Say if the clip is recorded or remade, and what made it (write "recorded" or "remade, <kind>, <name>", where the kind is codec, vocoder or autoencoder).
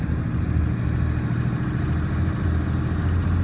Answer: recorded